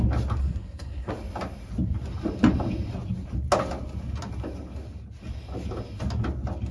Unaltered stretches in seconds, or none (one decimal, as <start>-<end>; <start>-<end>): 0.0-0.4; 1.1-6.7